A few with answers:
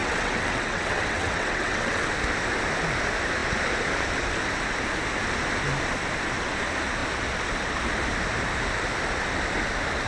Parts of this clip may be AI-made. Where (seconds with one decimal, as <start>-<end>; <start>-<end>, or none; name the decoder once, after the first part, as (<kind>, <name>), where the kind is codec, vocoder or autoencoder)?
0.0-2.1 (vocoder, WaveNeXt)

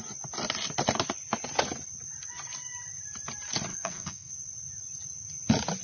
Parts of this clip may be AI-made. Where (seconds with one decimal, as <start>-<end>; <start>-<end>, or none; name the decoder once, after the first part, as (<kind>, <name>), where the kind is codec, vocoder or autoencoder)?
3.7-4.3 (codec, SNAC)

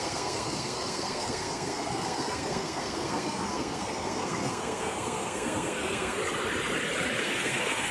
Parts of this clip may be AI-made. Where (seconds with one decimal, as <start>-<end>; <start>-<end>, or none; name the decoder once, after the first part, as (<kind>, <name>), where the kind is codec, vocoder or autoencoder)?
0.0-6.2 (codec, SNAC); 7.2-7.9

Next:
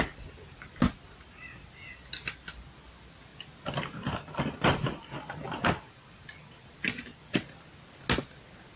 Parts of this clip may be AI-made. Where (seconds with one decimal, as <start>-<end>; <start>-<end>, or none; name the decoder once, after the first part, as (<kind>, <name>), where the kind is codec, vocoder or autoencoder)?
none

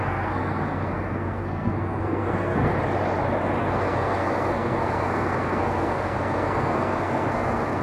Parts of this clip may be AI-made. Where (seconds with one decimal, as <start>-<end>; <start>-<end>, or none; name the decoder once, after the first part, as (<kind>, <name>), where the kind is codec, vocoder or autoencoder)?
0.0-2.7 (codec, SNAC); 3.6-7.8

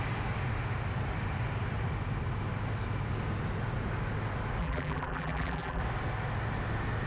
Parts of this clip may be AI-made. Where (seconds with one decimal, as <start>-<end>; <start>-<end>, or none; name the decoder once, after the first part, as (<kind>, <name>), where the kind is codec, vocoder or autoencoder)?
4.6-5.8 (vocoder, BigVGAN v2)

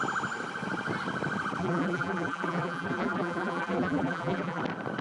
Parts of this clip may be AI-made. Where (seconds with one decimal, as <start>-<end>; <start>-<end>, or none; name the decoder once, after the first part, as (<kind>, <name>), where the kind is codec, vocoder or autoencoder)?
1.6-4.6 (vocoder, BigVGAN v2)

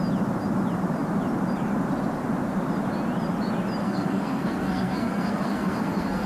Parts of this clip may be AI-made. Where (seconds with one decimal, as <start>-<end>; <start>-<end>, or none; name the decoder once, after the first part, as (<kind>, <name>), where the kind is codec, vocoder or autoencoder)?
3.8-6.3 (codec, SNAC)